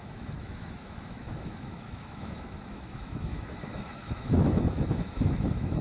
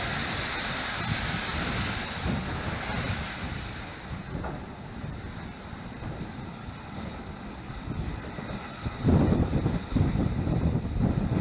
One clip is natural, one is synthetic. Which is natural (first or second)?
second